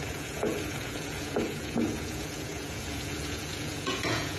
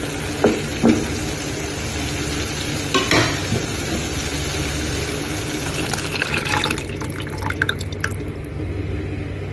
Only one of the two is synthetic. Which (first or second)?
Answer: first